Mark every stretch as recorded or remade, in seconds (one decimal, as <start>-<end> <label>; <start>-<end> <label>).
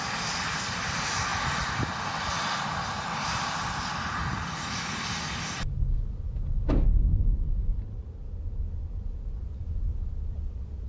0.0-10.9 recorded